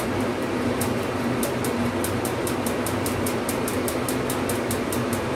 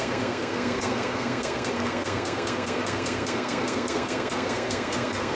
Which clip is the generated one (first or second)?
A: second